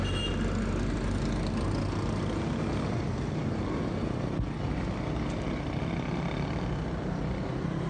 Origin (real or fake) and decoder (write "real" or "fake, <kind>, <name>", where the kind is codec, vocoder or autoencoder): real